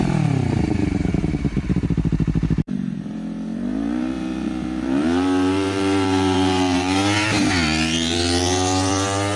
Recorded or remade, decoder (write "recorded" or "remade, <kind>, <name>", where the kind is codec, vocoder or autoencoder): remade, vocoder, BigVGAN v2